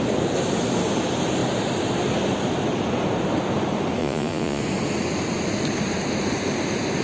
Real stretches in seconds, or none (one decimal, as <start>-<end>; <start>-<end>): 0.0-4.0; 4.6-7.0